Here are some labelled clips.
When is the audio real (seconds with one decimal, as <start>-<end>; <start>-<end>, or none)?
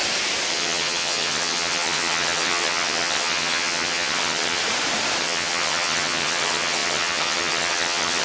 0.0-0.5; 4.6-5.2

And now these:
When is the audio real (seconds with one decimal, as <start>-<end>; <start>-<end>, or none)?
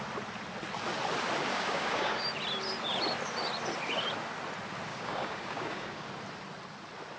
0.0-1.5; 2.2-4.9; 6.1-7.2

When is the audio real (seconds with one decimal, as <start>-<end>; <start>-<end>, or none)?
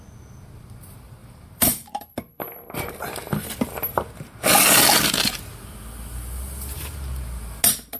0.0-1.2; 2.9-8.0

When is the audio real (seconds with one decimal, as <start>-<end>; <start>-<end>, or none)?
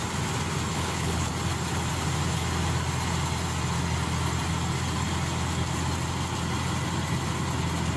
0.0-0.7; 1.3-8.0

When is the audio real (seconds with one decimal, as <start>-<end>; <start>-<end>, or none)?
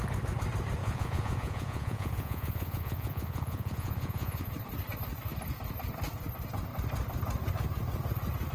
0.0-0.8; 4.5-8.5